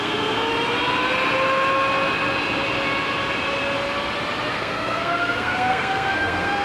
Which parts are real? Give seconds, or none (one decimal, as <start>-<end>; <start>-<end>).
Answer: 0.5-4.5